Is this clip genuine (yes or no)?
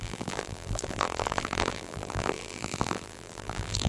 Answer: no